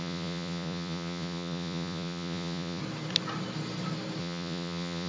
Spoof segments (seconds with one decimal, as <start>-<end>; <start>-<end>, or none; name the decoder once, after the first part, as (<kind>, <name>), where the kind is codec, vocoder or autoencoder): 0.0-2.8 (vocoder, Vocos); 4.2-5.1

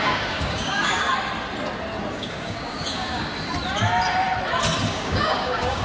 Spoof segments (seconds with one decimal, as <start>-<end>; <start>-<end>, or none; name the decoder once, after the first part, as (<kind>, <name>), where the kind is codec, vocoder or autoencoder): 0.0-1.1 (codec, DAC); 2.1-3.3; 4.9-5.8

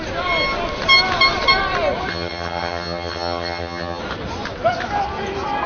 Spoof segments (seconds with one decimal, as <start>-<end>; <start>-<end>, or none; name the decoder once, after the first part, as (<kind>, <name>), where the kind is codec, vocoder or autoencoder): 2.1-4.0 (vocoder, HiFi-GAN)

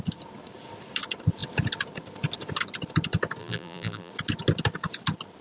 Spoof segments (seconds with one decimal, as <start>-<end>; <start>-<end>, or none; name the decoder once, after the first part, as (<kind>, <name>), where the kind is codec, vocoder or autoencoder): 3.4-4.1 (vocoder, BigVGAN v2)